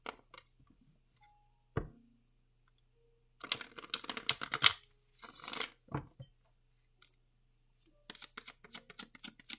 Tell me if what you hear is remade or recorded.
recorded